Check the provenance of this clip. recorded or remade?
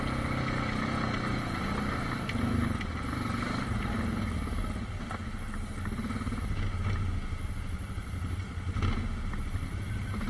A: recorded